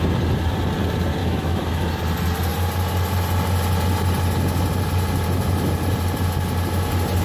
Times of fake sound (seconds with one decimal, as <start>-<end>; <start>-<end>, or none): 1.2-1.8